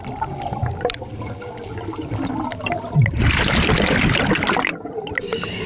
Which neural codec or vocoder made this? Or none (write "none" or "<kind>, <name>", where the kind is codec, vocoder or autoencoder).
none